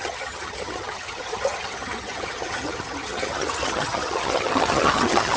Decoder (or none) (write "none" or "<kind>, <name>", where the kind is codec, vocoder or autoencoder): vocoder, HiFi-GAN